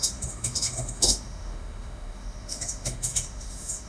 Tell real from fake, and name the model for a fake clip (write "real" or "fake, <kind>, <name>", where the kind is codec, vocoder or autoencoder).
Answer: fake, autoencoder, DAC-VAE